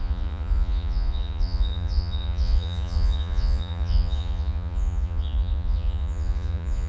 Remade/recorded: remade